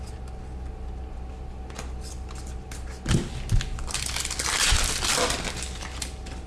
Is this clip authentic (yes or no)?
yes